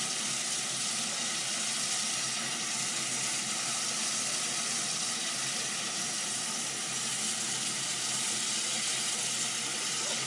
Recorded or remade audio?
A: recorded